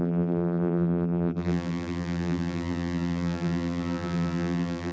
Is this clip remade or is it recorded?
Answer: remade